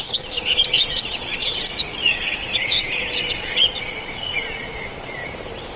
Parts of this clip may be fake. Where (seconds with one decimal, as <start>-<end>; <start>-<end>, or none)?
0.0-5.2

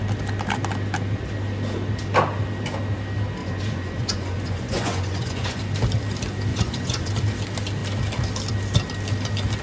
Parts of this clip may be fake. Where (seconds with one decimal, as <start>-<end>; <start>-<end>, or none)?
3.4-5.6; 6.5-7.1